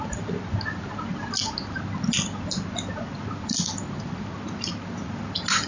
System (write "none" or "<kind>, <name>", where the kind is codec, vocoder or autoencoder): none